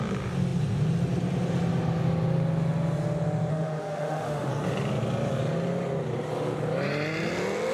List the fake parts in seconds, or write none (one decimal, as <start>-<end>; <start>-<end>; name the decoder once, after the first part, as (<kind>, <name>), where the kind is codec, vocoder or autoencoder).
3.5-4.5 (autoencoder, DAC-VAE)